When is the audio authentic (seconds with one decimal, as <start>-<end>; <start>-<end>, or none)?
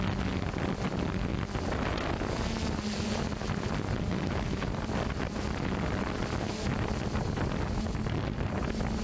0.0-9.0